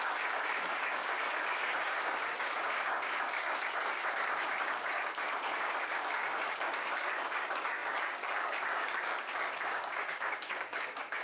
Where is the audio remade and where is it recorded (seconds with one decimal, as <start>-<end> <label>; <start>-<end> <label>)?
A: 0.0-11.2 remade